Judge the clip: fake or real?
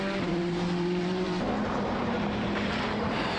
fake